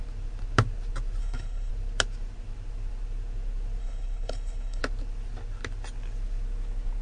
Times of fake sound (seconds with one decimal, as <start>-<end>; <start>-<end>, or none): 1.2-1.7; 3.8-4.8